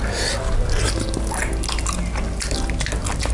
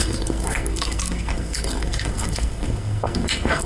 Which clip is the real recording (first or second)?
first